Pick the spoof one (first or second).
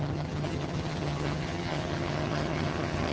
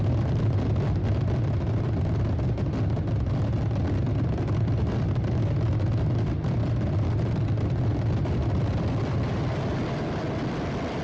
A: first